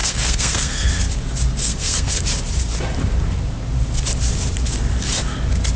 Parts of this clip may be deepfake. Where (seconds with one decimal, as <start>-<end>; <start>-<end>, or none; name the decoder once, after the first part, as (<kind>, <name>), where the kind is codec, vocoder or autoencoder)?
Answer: 0.0-0.9 (codec, SNAC); 1.6-2.2

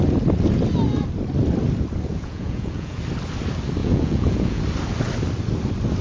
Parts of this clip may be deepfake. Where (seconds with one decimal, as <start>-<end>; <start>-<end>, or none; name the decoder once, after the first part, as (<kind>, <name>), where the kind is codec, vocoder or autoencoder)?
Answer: 2.1-3.0 (vocoder, Vocos); 3.8-4.6

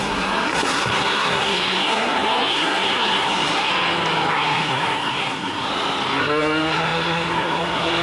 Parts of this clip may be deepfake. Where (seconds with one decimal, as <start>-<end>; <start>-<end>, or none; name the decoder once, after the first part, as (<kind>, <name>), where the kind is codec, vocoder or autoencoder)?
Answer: 0.0-3.7 (codec, SNAC); 4.3-5.7; 6.2-8.0

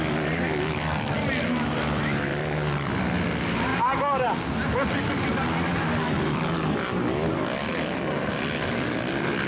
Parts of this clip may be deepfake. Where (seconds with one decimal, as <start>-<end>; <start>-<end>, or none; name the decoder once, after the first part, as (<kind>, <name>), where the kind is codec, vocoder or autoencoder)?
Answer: none